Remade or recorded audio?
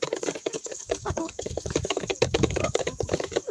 remade